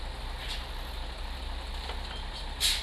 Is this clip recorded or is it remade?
recorded